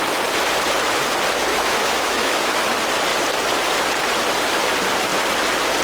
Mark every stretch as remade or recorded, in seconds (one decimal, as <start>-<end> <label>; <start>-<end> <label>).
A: 0.0-1.5 recorded; 1.5-2.6 remade; 2.6-5.8 recorded